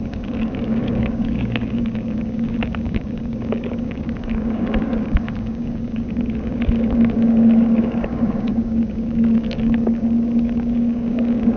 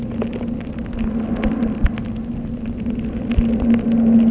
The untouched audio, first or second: second